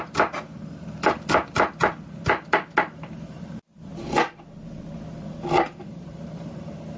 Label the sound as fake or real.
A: real